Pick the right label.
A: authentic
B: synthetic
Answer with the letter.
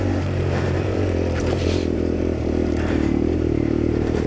B